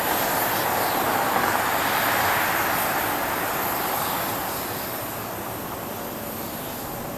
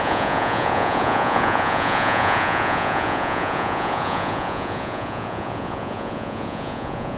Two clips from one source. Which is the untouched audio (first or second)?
first